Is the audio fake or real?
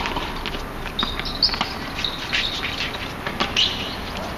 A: real